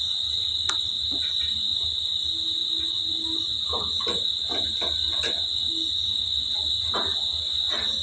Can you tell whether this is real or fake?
real